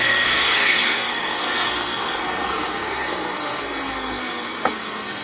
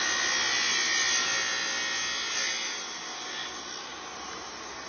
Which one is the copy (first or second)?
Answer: first